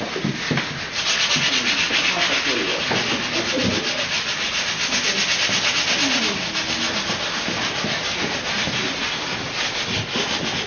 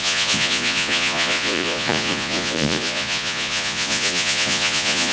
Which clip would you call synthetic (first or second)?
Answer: second